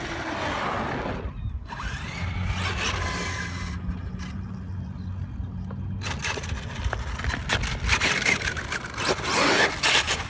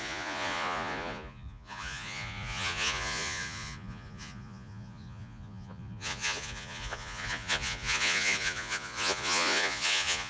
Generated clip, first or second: second